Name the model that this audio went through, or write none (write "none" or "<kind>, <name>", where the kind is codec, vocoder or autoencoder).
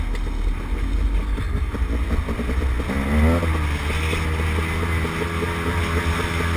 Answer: none